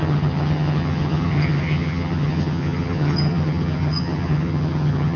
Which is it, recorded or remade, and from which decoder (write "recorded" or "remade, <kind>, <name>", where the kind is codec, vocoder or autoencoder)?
remade, vocoder, HiFi-GAN